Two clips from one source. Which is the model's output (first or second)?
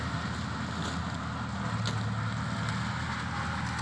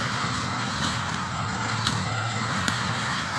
second